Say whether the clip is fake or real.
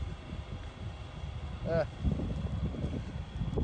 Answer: real